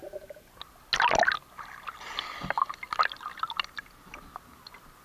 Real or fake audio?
real